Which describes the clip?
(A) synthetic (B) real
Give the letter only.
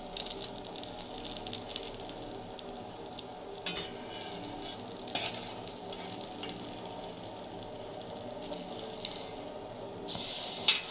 B